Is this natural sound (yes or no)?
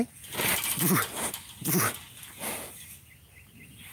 yes